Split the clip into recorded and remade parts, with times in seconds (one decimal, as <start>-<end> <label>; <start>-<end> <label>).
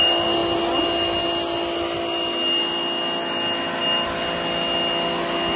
0.0-5.6 recorded